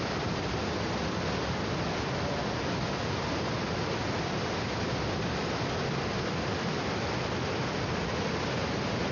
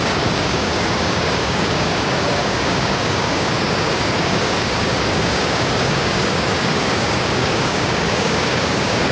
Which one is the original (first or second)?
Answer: first